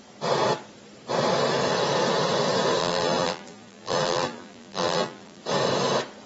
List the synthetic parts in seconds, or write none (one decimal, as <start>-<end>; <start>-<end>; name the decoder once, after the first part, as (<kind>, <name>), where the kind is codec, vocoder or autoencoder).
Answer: 2.8-5.4 (vocoder, BigVGAN v2)